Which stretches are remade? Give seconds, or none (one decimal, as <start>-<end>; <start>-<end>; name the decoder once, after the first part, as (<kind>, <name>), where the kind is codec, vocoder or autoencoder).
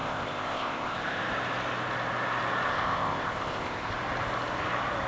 0.0-1.2 (codec, ZipCodec); 2.7-3.9